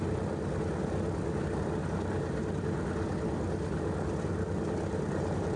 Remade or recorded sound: recorded